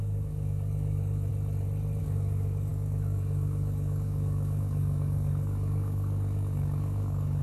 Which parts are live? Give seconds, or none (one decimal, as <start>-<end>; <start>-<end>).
1.3-2.0